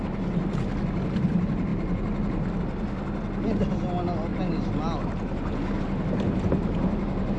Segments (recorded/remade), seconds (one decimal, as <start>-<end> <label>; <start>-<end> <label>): 0.0-7.4 recorded

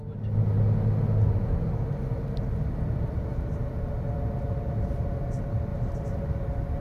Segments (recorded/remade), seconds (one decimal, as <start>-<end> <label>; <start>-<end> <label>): 0.0-6.8 recorded

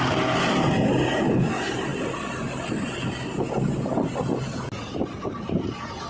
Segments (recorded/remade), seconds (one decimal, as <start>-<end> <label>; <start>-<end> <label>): 0.0-6.1 recorded

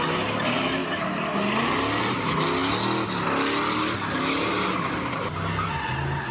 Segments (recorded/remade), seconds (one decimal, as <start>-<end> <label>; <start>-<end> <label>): 0.0-6.3 recorded

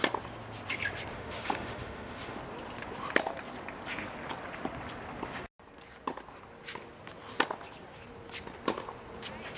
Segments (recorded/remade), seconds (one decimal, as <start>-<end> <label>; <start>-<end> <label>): 0.0-1.1 recorded; 1.1-2.4 remade; 2.4-9.6 recorded